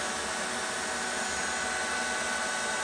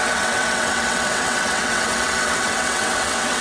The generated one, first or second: second